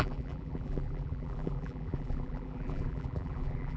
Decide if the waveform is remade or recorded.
remade